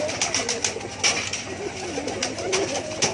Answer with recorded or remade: recorded